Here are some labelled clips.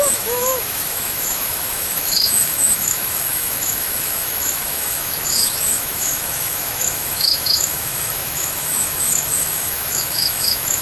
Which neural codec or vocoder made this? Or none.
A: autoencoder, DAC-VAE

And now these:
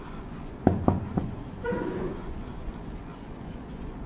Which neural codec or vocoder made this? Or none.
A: vocoder, Vocos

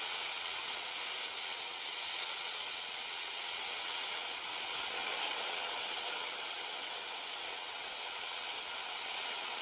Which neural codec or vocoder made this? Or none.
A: vocoder, WaveNeXt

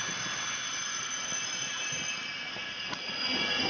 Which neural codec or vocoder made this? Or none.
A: none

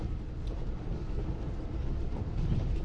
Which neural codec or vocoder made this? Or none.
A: vocoder, BigVGAN v2